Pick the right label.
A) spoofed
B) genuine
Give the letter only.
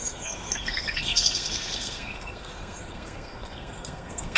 A